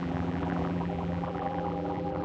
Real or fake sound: fake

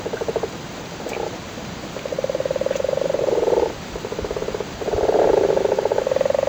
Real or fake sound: real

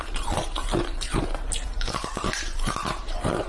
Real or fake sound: fake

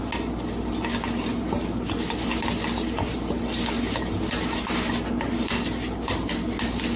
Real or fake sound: real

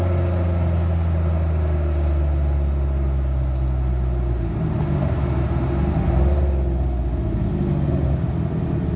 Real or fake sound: real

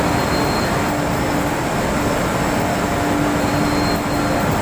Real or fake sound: real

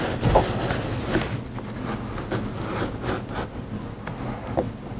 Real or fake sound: real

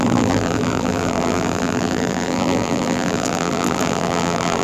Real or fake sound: fake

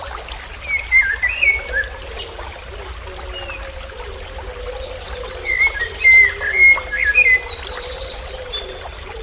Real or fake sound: real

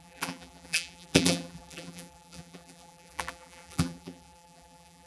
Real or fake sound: fake